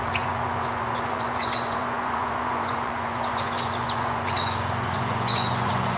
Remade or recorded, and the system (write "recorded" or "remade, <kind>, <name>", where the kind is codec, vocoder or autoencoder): remade, vocoder, Vocos